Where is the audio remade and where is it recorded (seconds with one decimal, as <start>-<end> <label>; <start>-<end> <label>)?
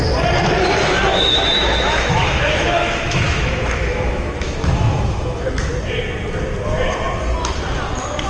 0.0-1.1 recorded; 1.1-5.7 remade; 5.7-8.3 recorded